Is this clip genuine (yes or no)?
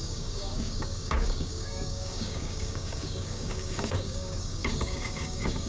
no